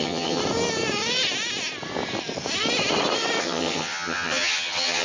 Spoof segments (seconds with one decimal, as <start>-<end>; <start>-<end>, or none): 0.0-0.4; 3.4-5.0